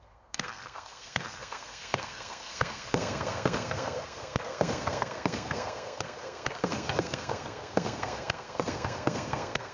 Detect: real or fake fake